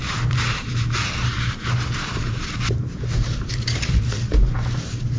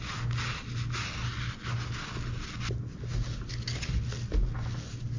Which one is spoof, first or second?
first